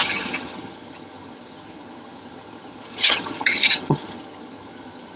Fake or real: fake